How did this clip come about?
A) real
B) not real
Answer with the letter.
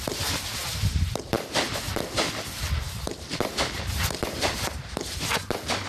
B